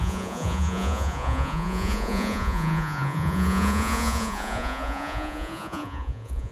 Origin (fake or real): fake